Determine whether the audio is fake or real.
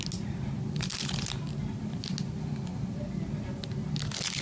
real